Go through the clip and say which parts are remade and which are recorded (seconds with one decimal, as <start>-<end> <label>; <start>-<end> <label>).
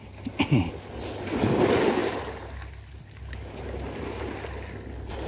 0.0-5.3 recorded